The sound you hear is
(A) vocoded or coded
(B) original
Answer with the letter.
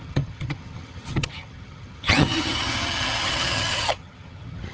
A